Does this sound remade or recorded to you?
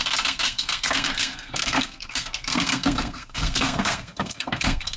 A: remade